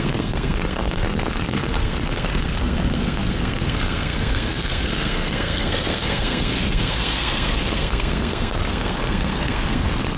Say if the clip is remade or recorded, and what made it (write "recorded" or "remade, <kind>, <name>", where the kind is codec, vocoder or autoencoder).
remade, codec, SNAC